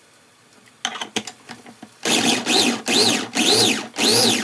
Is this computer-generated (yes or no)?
no